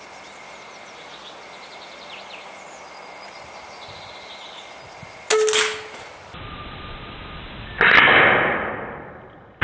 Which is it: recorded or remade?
recorded